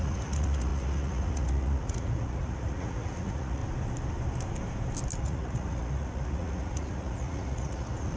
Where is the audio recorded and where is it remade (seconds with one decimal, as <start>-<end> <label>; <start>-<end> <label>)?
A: 0.0-3.6 remade; 3.6-5.2 recorded; 5.2-8.2 remade